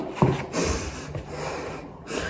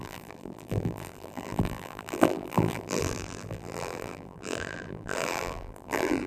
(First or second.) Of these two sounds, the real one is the first